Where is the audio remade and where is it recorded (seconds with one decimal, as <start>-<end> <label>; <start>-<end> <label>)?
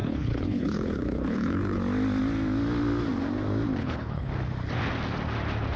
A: 0.0-1.8 remade; 1.8-3.8 recorded; 3.8-4.3 remade; 4.3-5.8 recorded